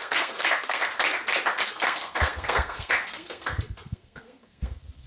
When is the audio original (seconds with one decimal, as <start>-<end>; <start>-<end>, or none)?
0.8-1.7